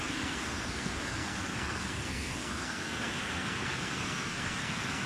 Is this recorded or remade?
remade